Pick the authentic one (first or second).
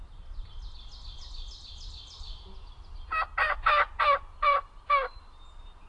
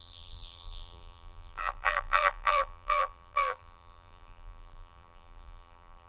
first